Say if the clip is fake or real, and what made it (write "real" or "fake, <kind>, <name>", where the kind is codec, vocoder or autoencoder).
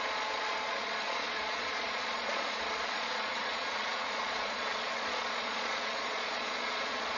fake, vocoder, Vocos